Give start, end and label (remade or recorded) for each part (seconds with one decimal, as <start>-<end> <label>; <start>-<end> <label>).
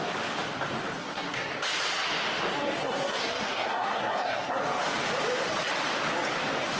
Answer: 0.0-1.0 recorded; 1.0-1.5 remade; 1.5-2.8 recorded; 2.8-4.6 remade; 4.6-6.8 recorded